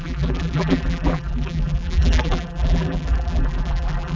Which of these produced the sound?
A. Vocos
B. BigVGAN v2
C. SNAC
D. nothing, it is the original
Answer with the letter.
B